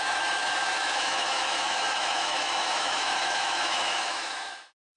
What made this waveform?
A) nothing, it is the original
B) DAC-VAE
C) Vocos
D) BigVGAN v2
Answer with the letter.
B